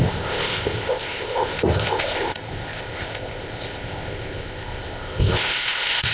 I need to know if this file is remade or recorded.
remade